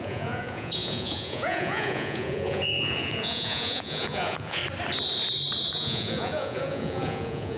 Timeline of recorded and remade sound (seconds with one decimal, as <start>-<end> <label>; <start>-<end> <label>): 0.0-4.6 remade; 4.6-5.7 recorded; 5.7-7.6 remade